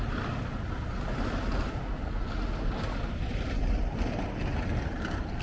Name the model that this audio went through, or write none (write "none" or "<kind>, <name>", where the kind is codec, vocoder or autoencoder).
none